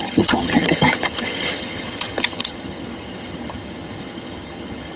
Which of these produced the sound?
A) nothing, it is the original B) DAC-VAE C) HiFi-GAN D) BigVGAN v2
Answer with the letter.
C